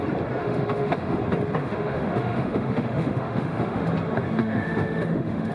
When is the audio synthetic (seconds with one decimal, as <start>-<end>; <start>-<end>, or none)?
0.4-1.2; 1.6-3.8; 4.4-5.5